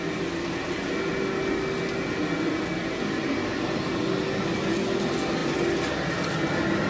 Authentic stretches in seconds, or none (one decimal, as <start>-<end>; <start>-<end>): 0.0-6.9